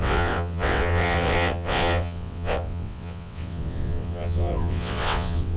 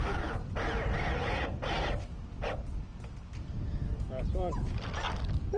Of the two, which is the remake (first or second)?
first